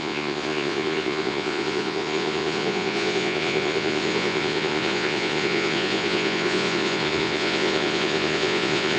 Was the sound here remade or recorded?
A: remade